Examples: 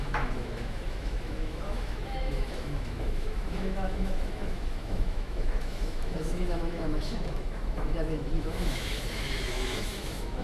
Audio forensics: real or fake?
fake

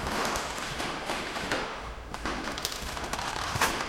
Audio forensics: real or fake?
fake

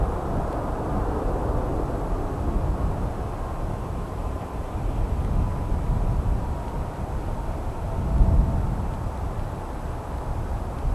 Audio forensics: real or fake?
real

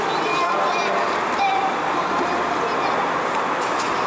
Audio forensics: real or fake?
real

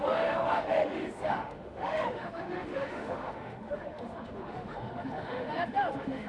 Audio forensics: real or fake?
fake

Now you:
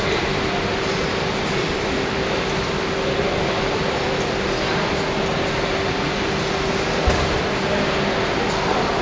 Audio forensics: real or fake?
real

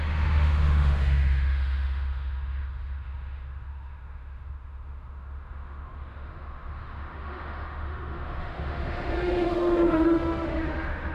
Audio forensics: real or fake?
fake